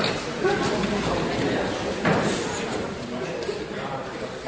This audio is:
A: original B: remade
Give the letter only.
A